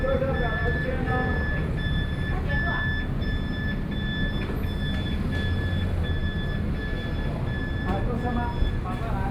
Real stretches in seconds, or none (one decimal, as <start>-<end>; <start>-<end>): 0.0-9.3